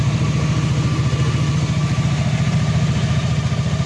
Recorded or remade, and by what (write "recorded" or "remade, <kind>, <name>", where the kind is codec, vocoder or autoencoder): recorded